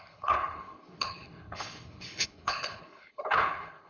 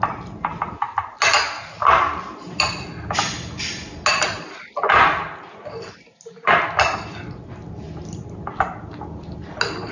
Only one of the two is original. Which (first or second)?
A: second